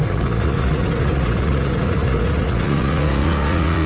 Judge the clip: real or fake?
fake